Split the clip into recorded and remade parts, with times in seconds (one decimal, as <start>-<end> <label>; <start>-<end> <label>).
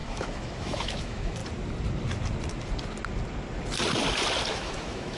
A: 0.0-1.4 remade; 1.4-4.5 recorded; 4.5-5.2 remade